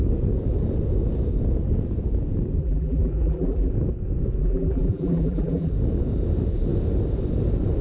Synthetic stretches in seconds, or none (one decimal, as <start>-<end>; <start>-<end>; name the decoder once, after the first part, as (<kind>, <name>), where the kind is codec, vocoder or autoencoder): 2.6-3.7 (vocoder, BigVGAN v2); 4.4-5.7